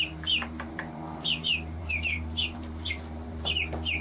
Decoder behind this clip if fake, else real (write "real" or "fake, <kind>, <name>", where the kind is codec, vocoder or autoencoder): fake, vocoder, BigVGAN v2